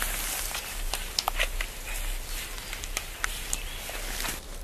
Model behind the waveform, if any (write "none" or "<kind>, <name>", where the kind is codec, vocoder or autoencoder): none